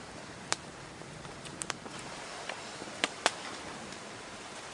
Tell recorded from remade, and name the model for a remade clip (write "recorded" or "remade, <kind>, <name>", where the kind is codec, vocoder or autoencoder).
remade, vocoder, BigVGAN v2